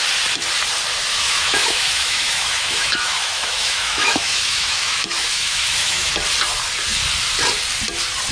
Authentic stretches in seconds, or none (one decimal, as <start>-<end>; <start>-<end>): 0.0-1.1; 6.1-8.3